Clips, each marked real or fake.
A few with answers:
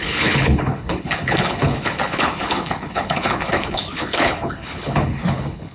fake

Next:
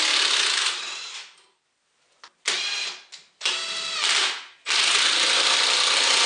real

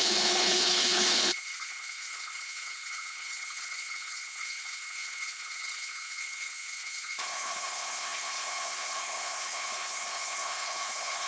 fake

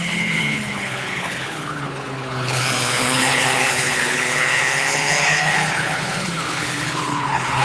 fake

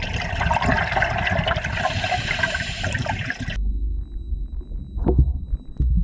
real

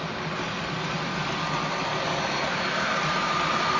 real